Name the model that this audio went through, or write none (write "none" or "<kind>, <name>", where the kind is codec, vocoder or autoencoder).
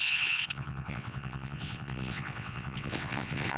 vocoder, WaveNeXt